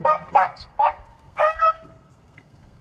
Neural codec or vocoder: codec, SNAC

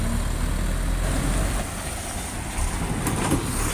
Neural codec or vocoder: none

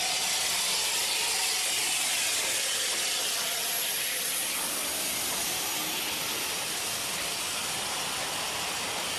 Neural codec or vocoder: none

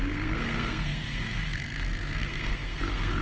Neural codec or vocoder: codec, SNAC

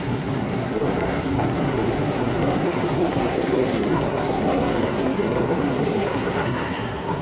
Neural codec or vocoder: codec, SNAC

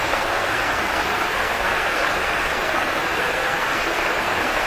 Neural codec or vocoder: codec, SNAC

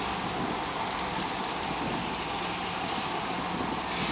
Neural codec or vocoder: none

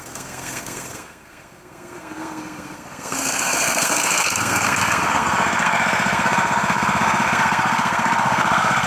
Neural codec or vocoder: codec, SNAC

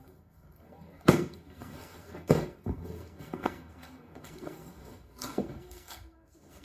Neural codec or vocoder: codec, SNAC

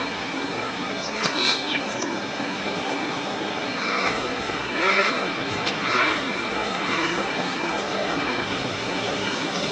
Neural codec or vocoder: codec, SNAC